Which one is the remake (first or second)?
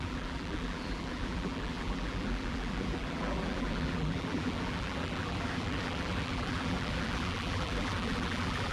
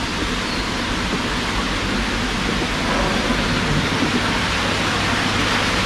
first